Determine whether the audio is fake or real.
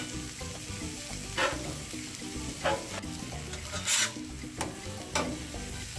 real